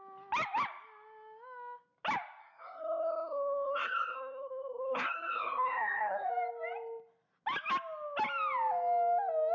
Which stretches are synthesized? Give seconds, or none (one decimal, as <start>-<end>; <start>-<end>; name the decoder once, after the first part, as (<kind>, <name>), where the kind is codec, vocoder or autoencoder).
2.4-6.3 (codec, SNAC)